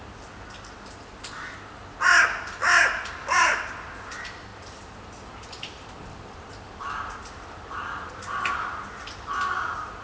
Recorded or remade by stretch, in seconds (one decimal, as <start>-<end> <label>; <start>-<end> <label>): 0.0-10.0 recorded